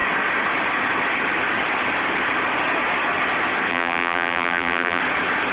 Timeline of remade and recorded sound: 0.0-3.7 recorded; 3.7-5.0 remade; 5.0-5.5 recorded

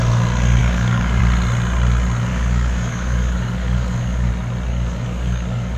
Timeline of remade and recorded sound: 0.0-0.6 recorded; 0.6-1.2 remade; 1.2-2.3 recorded; 2.3-4.3 remade; 4.3-4.7 recorded; 4.7-5.8 remade

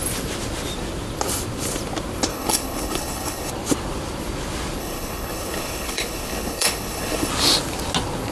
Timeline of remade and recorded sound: 0.0-2.3 recorded; 2.3-3.5 remade; 3.5-4.8 recorded; 4.8-7.3 remade; 7.3-8.3 recorded

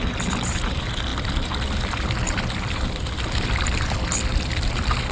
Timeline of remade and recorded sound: 0.0-5.1 remade

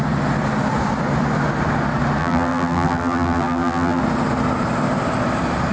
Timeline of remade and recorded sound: 0.0-2.2 recorded; 2.2-4.0 remade; 4.0-5.7 recorded

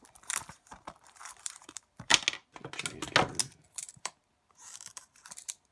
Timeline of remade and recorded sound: 0.0-2.1 remade; 2.1-3.7 recorded; 3.7-5.7 remade